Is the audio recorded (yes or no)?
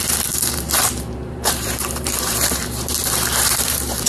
no